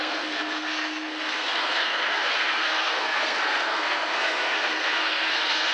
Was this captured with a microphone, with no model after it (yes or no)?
no